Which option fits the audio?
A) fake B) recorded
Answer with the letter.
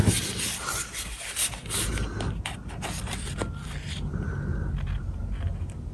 B